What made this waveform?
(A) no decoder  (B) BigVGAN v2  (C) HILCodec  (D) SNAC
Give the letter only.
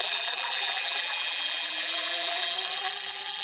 B